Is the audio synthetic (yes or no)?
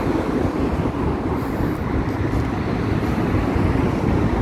no